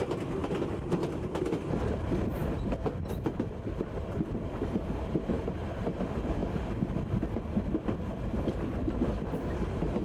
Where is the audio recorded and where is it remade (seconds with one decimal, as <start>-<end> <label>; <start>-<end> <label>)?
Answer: 0.0-0.4 recorded; 0.4-1.6 remade; 1.6-2.4 recorded; 2.4-5.8 remade; 5.8-10.0 recorded